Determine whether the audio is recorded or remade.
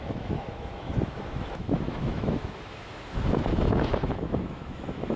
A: remade